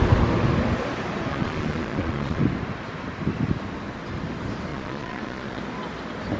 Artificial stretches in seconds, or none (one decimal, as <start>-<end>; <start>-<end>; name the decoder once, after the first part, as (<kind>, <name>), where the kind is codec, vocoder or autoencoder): 1.3-2.4 (vocoder, Vocos); 4.7-5.6